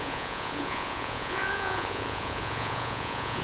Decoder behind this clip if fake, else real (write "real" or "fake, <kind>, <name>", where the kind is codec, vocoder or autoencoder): fake, vocoder, Vocos